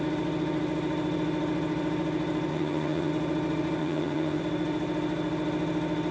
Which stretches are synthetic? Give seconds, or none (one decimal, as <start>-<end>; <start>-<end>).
2.5-3.1; 3.8-4.4

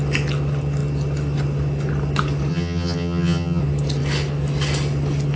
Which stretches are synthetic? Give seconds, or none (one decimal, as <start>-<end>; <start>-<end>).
2.5-3.6

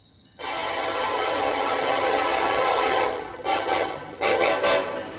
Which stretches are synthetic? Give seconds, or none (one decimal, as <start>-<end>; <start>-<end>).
0.0-4.5

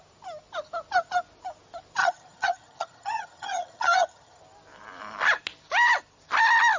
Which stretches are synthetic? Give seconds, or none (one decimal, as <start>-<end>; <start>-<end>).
2.0-4.4

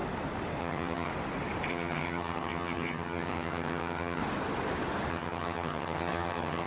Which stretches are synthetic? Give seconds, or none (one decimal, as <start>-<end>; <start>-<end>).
0.6-1.1; 1.7-4.2; 5.1-6.7

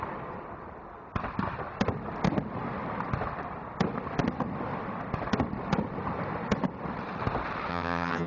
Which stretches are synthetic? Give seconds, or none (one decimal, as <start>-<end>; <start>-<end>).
7.7-8.3

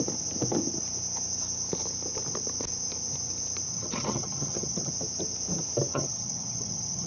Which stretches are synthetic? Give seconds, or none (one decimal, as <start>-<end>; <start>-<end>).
3.7-4.9; 5.9-7.1

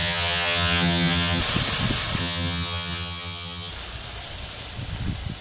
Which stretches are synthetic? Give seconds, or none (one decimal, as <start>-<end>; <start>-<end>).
0.0-1.4; 2.2-3.7